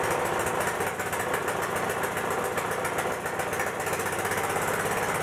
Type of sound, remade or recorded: recorded